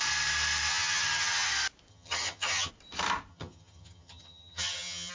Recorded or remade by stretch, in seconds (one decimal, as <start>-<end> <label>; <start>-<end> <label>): 0.0-0.7 recorded; 0.7-1.5 remade; 1.5-1.9 recorded; 1.9-2.7 remade; 2.7-3.3 recorded; 3.3-5.1 remade